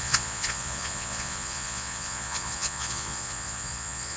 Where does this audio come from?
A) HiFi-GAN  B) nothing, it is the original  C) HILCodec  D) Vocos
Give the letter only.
D